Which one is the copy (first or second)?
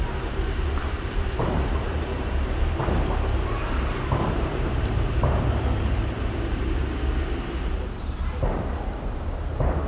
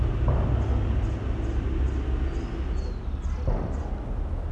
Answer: first